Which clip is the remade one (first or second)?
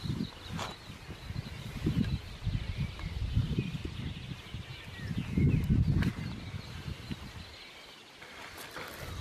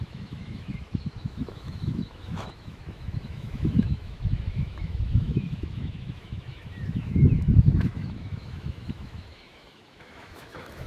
second